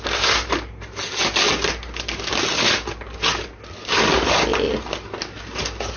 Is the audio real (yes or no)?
yes